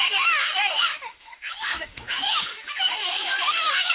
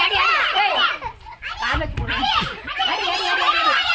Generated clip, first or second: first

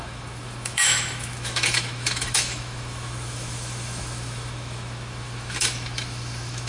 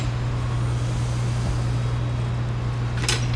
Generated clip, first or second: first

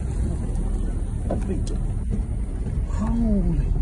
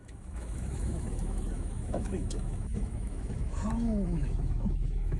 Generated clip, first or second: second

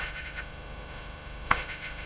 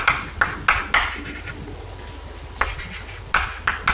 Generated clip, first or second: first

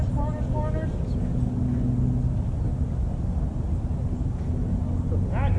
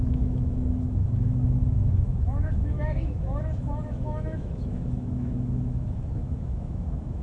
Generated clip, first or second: second